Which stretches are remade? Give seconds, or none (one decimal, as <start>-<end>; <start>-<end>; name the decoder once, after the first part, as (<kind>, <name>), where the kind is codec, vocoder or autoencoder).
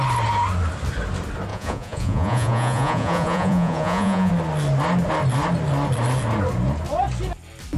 1.5-4.3 (vocoder, Vocos)